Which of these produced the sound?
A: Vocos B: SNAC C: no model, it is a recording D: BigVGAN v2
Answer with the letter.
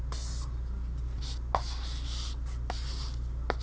C